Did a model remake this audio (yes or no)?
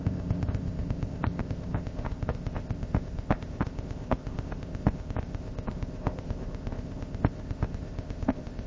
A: yes